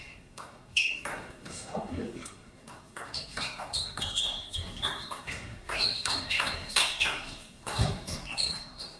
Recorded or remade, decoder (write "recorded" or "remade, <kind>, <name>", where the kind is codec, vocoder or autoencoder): remade, codec, SNAC